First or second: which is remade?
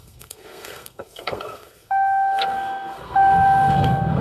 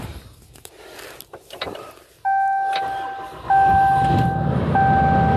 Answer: first